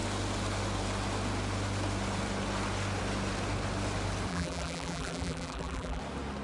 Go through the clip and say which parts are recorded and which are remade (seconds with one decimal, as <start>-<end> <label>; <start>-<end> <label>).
0.0-4.3 recorded; 4.3-6.0 remade; 6.0-6.4 recorded